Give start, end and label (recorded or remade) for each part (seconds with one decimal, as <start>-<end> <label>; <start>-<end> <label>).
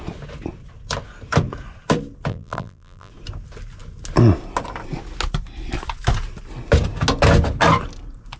0.0-2.3 recorded; 2.3-3.1 remade; 3.1-8.4 recorded